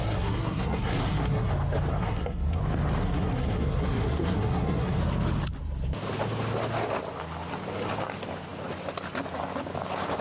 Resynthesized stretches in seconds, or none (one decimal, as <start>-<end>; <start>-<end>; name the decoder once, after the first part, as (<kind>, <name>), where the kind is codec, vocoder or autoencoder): 0.0-1.5 (codec, SNAC); 1.9-2.6; 3.0-5.0